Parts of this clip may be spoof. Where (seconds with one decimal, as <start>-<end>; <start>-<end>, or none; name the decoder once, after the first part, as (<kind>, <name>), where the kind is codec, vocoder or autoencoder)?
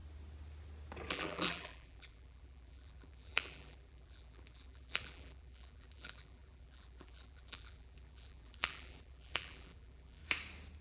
1.1-10.2 (vocoder, BigVGAN v2)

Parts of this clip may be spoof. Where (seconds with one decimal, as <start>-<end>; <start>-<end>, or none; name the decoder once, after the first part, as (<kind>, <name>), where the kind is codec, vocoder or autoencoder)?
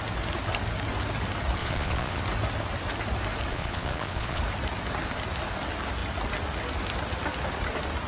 1.6-2.2 (vocoder, Vocos); 3.5-4.4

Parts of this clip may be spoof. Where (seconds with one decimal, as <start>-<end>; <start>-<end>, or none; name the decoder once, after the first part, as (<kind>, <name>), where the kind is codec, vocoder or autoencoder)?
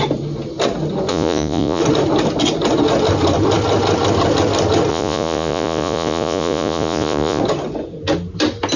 1.1-1.8 (vocoder, Vocos); 4.9-7.4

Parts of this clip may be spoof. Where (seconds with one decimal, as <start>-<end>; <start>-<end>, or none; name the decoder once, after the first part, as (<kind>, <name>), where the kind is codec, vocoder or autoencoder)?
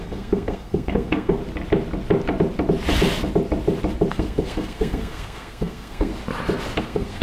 0.0-1.4 (codec, SNAC); 4.1-6.1; 6.8-7.2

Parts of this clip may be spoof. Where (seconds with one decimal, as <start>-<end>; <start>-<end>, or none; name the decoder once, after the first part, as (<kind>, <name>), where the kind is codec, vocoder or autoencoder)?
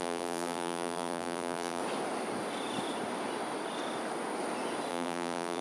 0.0-1.8 (vocoder, BigVGAN v2); 4.9-5.6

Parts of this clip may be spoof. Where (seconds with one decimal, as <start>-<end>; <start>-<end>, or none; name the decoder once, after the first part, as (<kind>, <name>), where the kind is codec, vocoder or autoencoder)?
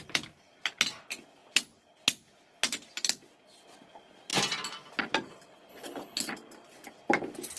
5.7-6.3 (codec, HILCodec)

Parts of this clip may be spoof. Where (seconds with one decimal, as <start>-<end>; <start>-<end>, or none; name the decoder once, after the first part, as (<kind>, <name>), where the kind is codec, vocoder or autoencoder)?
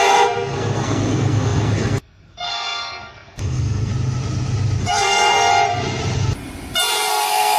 0.0-3.9 (codec, SNAC); 4.8-5.5; 7.1-7.6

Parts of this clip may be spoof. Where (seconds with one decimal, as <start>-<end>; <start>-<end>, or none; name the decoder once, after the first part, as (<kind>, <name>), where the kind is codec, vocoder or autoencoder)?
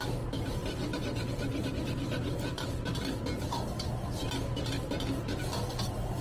none